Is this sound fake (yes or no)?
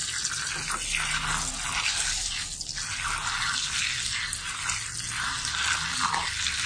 no